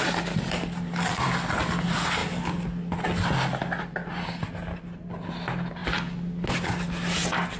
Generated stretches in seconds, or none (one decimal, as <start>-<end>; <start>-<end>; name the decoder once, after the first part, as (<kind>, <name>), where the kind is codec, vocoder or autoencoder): none